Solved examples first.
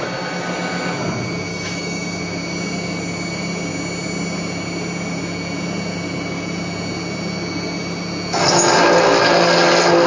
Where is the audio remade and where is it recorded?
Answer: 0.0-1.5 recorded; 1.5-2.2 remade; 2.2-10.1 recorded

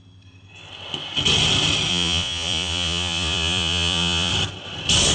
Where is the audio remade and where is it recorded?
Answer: 0.0-1.9 recorded; 1.9-4.3 remade; 4.3-5.1 recorded

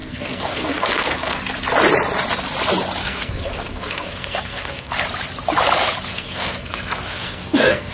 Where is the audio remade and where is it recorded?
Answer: 0.0-1.4 remade; 1.4-3.0 recorded; 3.0-4.9 remade; 4.9-6.1 recorded; 6.1-7.9 remade